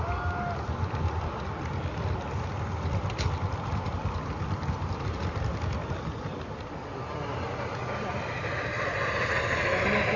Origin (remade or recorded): recorded